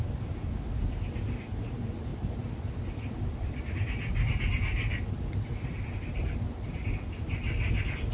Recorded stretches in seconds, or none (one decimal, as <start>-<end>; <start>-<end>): 0.0-8.1

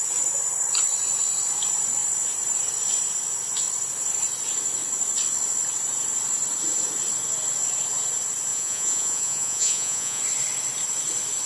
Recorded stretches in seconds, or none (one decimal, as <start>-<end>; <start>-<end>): 0.0-8.5; 10.2-11.5

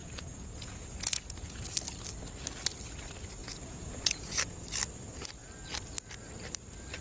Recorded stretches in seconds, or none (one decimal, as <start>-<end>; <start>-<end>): 1.6-3.4; 4.4-7.0

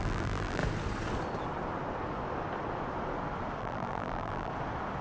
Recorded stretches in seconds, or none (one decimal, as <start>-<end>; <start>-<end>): 0.6-3.6; 4.5-5.0